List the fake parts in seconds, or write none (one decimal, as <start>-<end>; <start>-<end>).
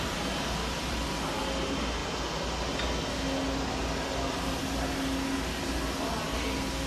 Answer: 0.6-1.2